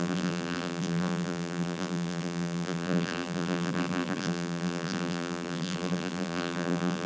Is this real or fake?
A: fake